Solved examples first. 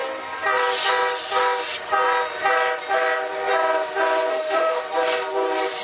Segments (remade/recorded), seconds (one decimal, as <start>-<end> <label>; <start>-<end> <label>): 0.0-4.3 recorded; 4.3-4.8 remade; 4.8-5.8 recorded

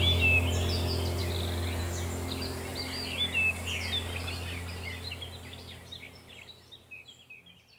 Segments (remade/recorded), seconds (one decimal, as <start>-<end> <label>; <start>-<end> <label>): 0.0-7.8 recorded

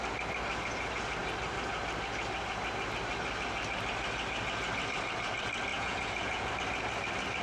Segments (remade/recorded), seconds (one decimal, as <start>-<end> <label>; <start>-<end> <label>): 0.0-5.7 recorded; 5.7-6.5 remade; 6.5-7.4 recorded

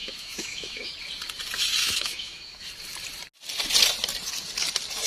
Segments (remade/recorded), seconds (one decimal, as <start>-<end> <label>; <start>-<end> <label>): 0.0-0.9 remade; 0.9-1.8 recorded; 1.8-2.6 remade; 2.6-5.1 recorded